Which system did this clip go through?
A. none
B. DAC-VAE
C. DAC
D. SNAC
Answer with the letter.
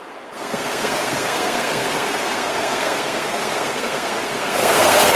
D